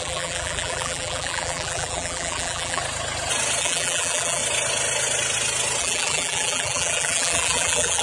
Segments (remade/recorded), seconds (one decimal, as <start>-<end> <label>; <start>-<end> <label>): 0.0-2.8 remade; 2.8-3.6 recorded; 3.6-4.4 remade; 4.4-5.8 recorded; 5.8-8.0 remade